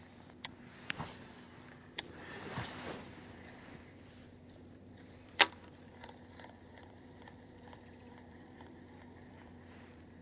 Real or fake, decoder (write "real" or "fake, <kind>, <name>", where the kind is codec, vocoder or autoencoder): fake, vocoder, BigVGAN v2